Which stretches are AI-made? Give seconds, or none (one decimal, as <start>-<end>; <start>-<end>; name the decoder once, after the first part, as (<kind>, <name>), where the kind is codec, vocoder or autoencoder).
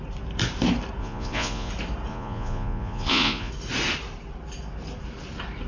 1.0-1.7 (vocoder, Vocos); 2.1-3.5